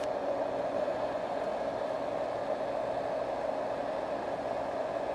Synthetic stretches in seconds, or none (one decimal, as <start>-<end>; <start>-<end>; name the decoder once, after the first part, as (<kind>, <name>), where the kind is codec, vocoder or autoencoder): 0.0-1.5 (vocoder, Vocos); 4.4-5.1

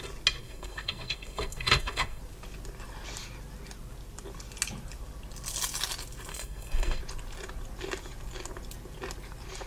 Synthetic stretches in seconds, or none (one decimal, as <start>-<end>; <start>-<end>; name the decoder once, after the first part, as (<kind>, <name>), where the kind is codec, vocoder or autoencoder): 0.4-2.2 (codec, SNAC); 6.3-7.0

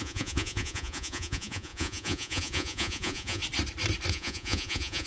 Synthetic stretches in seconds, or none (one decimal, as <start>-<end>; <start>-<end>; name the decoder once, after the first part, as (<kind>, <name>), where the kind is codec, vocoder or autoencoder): 0.0-3.4 (vocoder, Vocos); 4.1-5.1